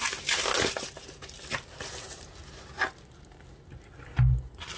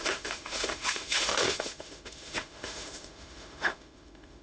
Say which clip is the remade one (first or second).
second